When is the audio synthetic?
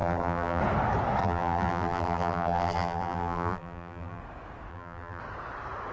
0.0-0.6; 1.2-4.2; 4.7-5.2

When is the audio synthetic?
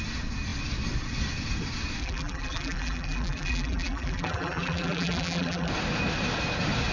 2.0-5.7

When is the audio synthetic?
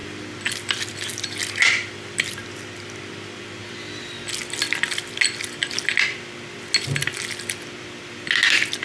none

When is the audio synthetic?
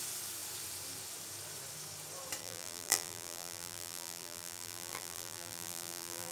2.4-6.3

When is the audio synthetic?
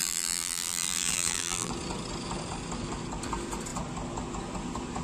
0.0-1.7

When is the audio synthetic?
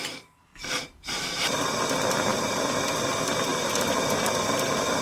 0.5-1.6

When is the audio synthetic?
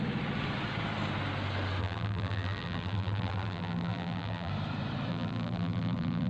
1.8-4.5; 5.1-6.3